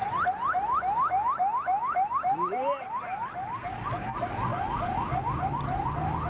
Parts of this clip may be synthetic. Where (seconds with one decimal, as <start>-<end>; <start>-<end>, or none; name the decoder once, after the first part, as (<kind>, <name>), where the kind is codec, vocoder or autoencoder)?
none